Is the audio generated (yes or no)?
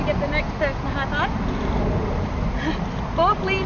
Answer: no